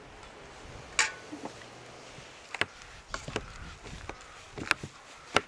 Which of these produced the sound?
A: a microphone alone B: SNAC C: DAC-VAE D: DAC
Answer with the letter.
A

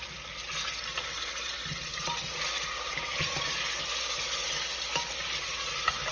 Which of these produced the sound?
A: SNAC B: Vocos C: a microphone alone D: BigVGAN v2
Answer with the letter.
C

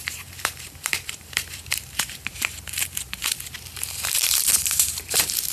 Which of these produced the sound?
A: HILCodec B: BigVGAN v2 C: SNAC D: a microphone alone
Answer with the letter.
B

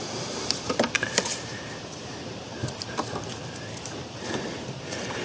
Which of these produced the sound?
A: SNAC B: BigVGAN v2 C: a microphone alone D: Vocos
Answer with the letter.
B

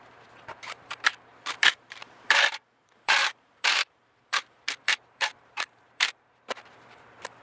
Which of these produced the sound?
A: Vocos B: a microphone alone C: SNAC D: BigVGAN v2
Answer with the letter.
D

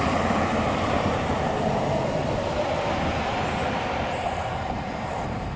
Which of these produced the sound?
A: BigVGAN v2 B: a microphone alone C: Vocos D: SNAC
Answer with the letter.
A